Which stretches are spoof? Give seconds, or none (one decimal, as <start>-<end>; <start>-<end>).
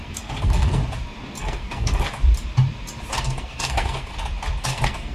0.0-0.8; 1.4-2.2; 3.2-4.1; 4.6-5.1